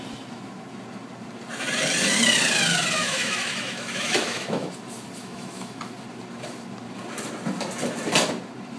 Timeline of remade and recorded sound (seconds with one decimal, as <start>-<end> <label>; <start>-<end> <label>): 0.0-3.0 recorded; 3.0-4.7 remade; 4.7-5.2 recorded; 5.2-5.8 remade; 5.8-8.8 recorded